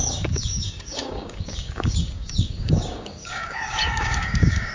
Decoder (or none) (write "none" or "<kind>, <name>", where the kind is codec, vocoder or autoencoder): codec, DAC